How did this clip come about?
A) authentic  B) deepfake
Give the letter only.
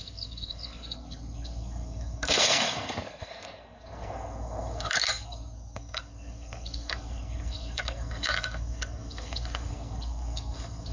B